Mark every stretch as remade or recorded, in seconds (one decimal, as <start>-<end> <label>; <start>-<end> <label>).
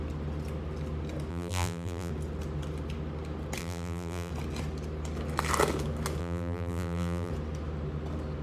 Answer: 0.0-1.3 recorded; 1.3-2.1 remade; 2.1-3.6 recorded; 3.6-4.3 remade; 4.3-6.2 recorded; 6.2-7.3 remade; 7.3-8.4 recorded